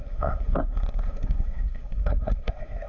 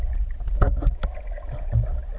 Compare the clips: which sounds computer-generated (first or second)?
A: first